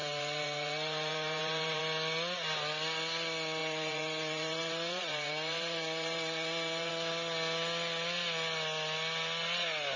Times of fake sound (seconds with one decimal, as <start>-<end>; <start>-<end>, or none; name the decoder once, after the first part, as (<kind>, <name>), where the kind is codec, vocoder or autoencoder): 0.0-1.8 (vocoder, BigVGAN v2); 3.6-6.9